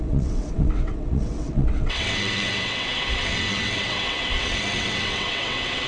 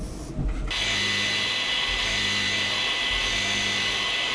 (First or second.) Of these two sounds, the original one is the second